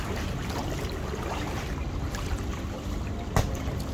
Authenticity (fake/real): real